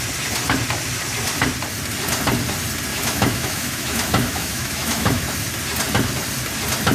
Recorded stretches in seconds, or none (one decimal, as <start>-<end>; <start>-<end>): 0.0-2.9; 5.2-6.9